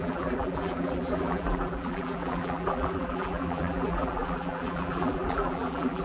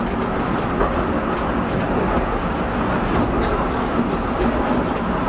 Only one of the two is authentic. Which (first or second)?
second